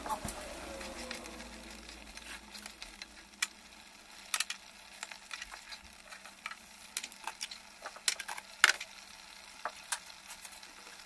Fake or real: real